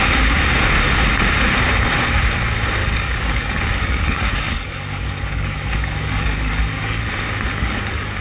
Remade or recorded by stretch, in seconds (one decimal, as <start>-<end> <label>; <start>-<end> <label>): 0.0-2.8 recorded; 2.8-7.0 remade; 7.0-7.5 recorded; 7.5-8.2 remade